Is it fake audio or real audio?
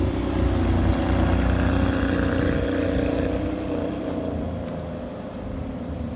real